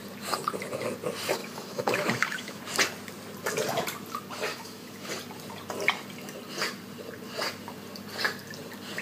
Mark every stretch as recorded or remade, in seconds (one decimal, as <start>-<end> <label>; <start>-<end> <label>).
0.0-1.4 recorded; 1.4-2.6 remade; 2.6-4.5 recorded; 4.5-5.1 remade; 5.1-9.0 recorded